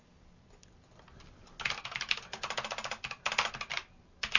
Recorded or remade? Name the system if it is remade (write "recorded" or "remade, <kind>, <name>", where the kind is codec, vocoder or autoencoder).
recorded